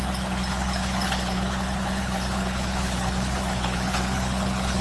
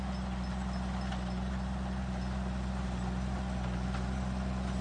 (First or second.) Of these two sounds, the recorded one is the second